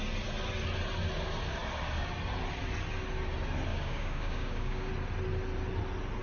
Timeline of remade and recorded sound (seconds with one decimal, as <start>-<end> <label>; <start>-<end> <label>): 0.0-3.7 recorded; 3.7-4.9 remade; 4.9-6.2 recorded